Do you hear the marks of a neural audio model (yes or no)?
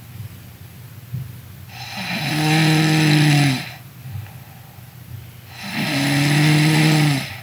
no